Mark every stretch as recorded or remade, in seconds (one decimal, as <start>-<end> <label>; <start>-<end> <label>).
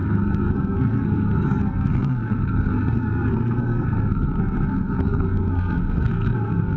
0.0-6.8 remade